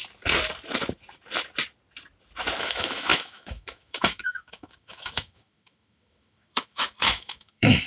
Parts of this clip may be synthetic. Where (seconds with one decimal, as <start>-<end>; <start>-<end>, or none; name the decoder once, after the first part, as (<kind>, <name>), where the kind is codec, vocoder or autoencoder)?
2.6-7.9 (autoencoder, DAC-VAE)